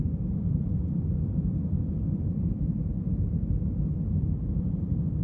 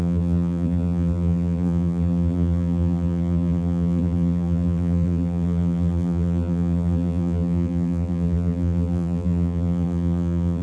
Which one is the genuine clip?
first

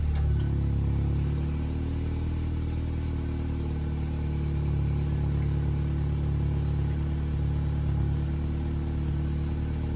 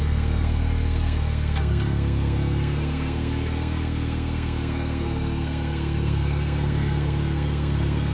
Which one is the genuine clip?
first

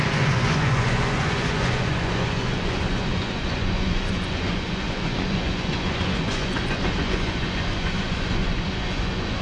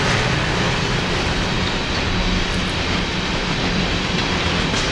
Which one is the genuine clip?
second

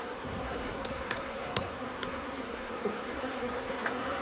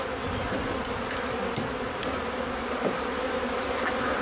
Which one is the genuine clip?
second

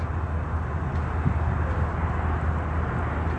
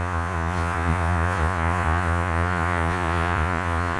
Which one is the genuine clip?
first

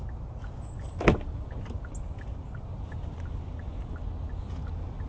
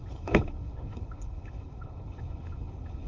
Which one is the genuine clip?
first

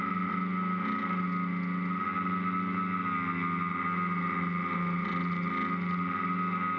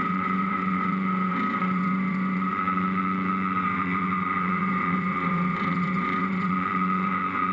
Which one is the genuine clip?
first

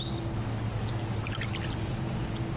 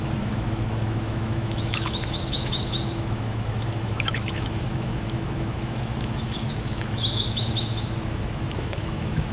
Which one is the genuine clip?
first